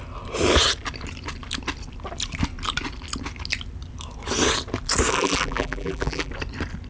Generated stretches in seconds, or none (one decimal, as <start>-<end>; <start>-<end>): 5.1-6.3